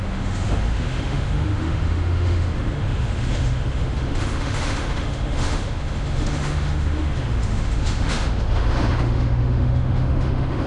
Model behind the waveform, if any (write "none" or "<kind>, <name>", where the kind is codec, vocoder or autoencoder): autoencoder, DAC-VAE